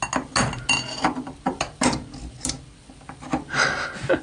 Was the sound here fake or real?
real